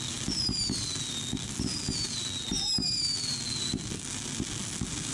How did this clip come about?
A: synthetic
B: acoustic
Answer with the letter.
B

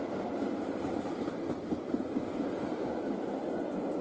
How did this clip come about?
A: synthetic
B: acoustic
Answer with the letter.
B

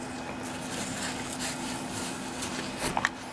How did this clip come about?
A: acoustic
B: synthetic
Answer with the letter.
A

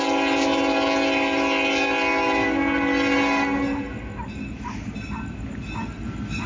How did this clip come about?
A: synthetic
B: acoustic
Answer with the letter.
B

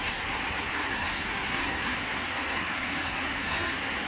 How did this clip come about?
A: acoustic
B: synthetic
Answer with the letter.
B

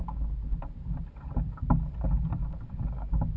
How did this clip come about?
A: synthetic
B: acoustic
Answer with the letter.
B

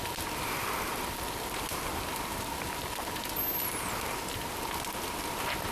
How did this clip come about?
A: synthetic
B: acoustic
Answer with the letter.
B